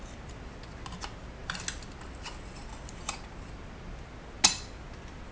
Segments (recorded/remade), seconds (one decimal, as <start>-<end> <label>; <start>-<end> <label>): 0.0-5.3 recorded